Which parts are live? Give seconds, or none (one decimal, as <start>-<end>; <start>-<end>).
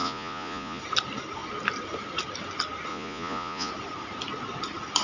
0.8-2.9; 3.7-5.0